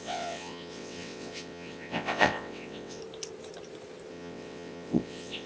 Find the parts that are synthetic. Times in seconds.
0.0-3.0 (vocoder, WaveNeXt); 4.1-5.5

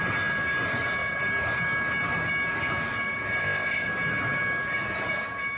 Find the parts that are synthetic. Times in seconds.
3.4-3.9 (codec, ZipCodec)

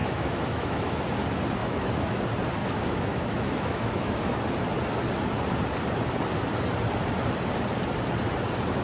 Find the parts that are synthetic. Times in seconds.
0.0-1.0 (autoencoder, DAC-VAE); 1.6-2.2; 2.6-4.2

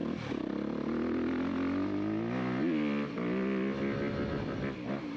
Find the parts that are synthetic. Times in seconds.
none